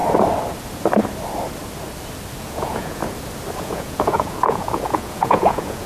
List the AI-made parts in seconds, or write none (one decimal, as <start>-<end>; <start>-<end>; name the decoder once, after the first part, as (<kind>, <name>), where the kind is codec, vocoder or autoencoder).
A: 2.4-3.0 (vocoder, Vocos); 3.6-5.9